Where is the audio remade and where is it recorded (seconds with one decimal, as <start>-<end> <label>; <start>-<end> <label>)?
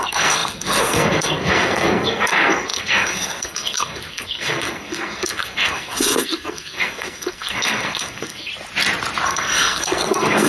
0.0-8.5 remade; 8.5-9.3 recorded; 9.3-10.5 remade